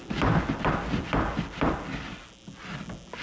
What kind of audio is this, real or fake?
real